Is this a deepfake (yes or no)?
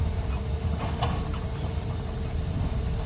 no